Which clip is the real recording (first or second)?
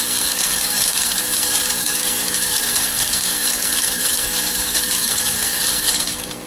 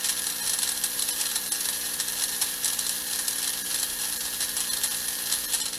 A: second